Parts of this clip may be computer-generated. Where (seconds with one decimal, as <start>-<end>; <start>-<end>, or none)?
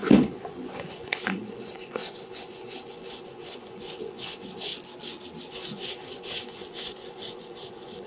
0.0-4.7; 5.5-8.1